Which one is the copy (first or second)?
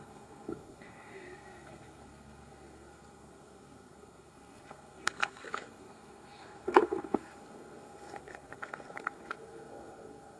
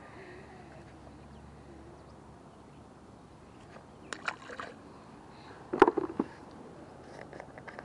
first